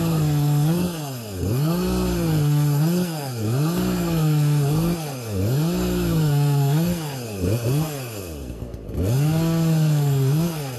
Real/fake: fake